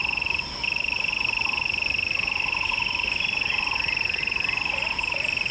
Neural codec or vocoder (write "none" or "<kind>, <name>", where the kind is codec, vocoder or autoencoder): vocoder, BigVGAN v2